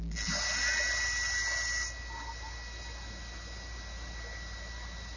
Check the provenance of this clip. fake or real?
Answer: real